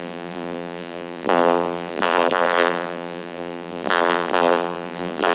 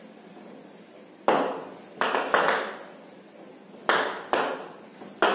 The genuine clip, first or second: second